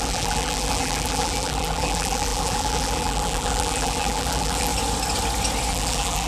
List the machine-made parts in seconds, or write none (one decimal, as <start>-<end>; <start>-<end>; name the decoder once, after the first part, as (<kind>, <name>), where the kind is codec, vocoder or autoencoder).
0.0-4.7 (vocoder, BigVGAN v2); 5.7-6.3